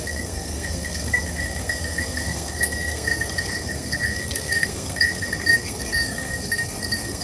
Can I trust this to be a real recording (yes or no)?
no